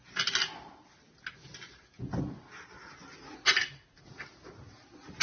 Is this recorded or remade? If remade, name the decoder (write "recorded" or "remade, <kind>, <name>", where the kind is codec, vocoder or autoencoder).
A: recorded